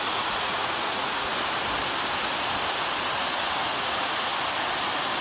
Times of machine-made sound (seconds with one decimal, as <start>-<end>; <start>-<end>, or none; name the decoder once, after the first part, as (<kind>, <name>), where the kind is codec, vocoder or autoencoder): 0.0-1.3 (vocoder, Vocos); 3.2-4.3